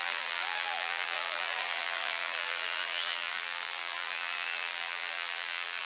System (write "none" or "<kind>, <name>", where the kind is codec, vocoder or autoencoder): vocoder, BigVGAN v2